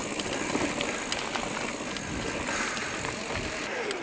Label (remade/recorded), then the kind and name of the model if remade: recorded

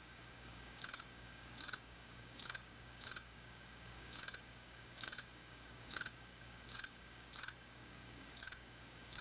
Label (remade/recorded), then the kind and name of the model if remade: remade, codec, DAC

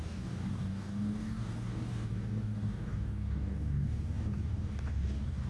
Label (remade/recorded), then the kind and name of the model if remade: remade, codec, DAC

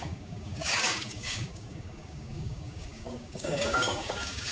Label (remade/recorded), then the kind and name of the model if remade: remade, codec, DAC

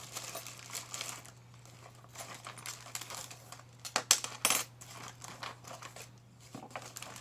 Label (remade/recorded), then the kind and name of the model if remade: recorded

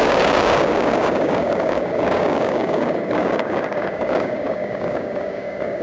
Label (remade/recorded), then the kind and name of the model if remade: remade, codec, DAC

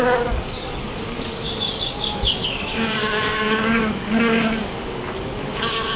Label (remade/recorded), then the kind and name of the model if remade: remade, codec, DAC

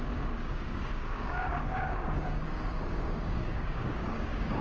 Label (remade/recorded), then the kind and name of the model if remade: remade, codec, DAC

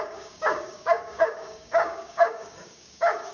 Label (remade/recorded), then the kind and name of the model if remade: remade, codec, DAC